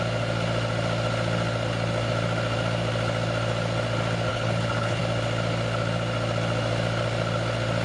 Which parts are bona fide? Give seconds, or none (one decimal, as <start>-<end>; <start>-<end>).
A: 0.0-4.3; 5.0-7.8

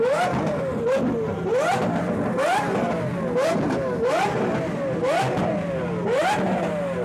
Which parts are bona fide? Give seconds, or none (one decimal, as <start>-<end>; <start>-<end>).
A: 0.0-7.0